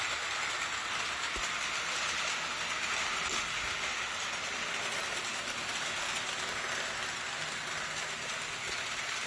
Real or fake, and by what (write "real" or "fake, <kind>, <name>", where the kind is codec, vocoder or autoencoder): real